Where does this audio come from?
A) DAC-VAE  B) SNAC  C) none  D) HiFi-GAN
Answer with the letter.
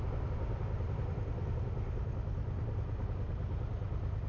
C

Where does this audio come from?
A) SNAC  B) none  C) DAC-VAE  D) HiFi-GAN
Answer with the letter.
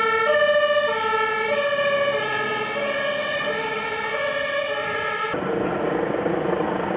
B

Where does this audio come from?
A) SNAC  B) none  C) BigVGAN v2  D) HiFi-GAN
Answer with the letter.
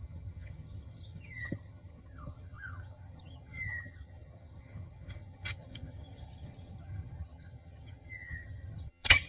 D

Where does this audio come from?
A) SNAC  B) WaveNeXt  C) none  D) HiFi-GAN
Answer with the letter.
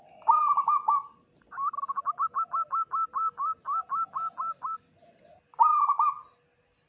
C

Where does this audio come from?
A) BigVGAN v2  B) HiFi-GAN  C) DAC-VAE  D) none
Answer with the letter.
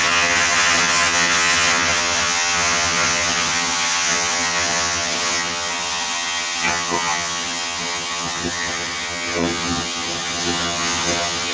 B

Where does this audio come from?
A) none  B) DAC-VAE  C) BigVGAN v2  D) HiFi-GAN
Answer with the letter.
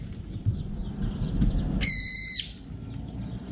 A